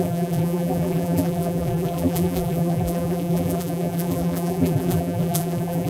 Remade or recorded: remade